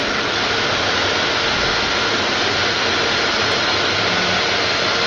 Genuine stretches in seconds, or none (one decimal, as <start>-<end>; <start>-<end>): 1.5-5.1